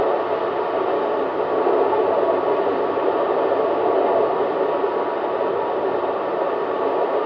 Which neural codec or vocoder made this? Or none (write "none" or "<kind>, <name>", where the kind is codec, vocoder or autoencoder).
none